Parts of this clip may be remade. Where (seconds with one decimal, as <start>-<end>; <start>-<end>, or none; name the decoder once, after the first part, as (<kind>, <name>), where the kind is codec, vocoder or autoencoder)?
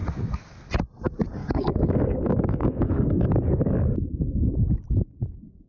1.4-3.2 (codec, DAC)